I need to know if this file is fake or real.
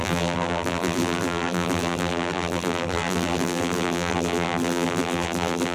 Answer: fake